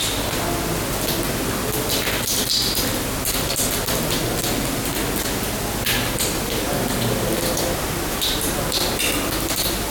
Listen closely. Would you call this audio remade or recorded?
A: recorded